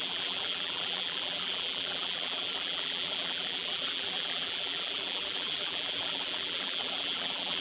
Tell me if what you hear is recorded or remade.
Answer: remade